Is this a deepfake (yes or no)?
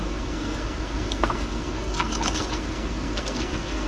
yes